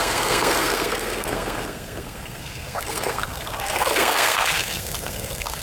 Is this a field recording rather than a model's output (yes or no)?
no